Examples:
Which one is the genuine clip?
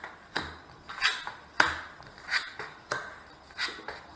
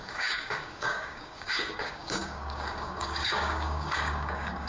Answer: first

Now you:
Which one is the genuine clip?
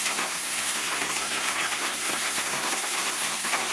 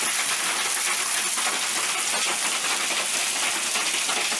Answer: second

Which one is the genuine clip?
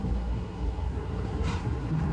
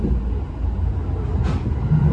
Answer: second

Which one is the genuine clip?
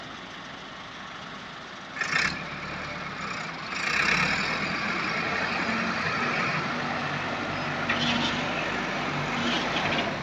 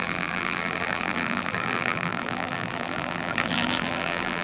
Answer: first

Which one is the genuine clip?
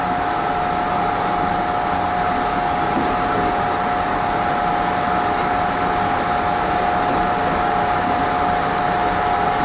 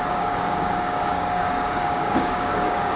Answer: first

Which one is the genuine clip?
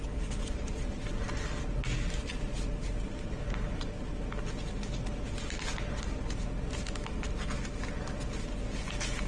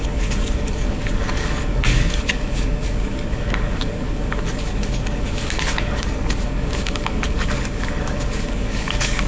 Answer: first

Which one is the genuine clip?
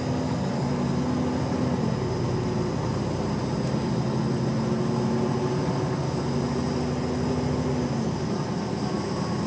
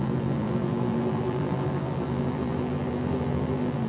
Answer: first